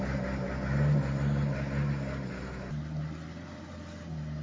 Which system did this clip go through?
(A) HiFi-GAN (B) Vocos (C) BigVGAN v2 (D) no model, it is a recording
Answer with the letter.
D